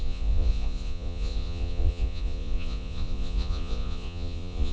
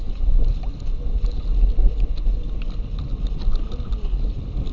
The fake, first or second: first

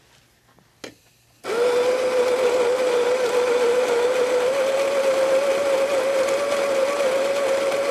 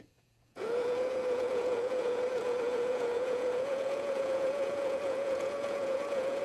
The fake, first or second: second